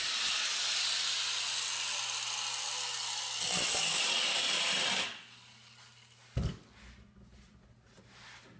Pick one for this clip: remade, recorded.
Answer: recorded